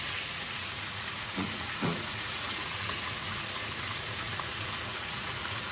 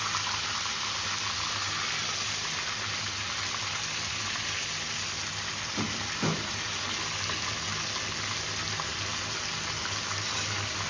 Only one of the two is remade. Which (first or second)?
first